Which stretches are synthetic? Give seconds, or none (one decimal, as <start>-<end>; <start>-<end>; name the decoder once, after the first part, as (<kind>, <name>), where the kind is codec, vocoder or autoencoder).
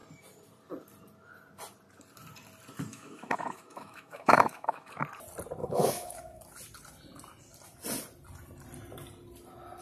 2.9-4.9 (autoencoder, DAC-VAE); 5.6-6.4